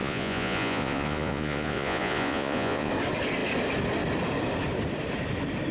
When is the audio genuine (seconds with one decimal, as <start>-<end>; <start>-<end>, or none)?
2.9-5.7